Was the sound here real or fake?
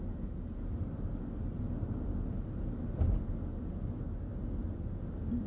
real